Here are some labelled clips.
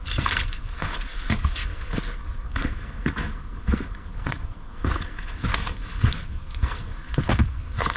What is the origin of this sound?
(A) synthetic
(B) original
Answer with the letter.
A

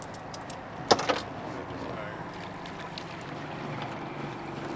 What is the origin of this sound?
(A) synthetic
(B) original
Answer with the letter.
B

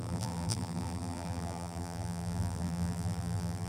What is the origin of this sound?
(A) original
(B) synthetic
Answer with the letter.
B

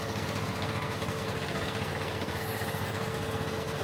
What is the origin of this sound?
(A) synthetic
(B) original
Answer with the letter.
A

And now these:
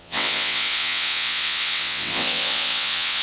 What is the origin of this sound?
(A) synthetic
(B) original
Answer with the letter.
A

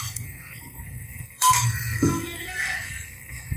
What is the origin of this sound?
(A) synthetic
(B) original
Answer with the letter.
A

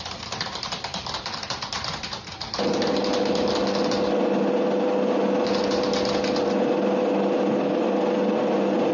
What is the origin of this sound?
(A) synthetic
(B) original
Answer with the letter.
B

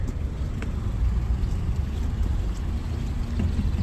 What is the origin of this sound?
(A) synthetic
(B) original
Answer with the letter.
B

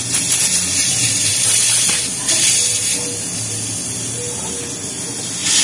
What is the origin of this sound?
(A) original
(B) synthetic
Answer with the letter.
A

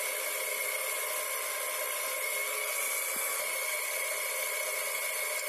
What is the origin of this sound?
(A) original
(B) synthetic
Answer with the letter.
A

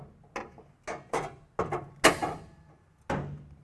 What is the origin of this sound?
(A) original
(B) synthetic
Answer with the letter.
A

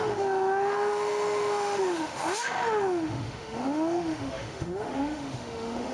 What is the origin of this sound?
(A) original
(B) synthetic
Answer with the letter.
B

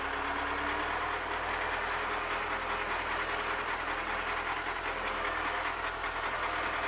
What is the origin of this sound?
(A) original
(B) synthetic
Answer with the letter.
A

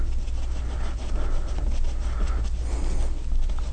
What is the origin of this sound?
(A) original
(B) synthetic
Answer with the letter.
A